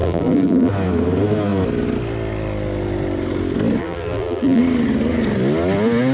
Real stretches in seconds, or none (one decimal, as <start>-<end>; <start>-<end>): 0.7-3.8; 4.6-6.1